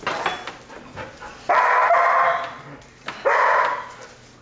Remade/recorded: recorded